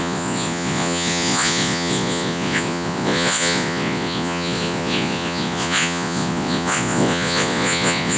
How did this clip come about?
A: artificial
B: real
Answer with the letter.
A